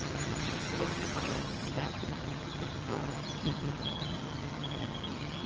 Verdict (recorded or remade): remade